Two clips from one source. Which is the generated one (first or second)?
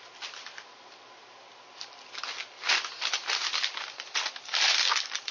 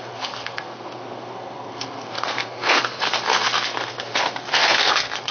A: second